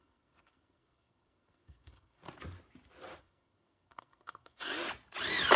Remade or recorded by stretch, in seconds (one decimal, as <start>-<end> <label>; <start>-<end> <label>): 0.0-2.2 remade; 2.2-3.2 recorded; 3.2-4.7 remade; 4.7-5.6 recorded